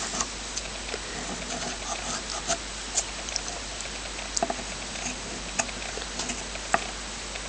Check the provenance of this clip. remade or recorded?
recorded